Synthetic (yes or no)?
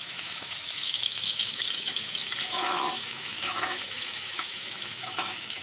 yes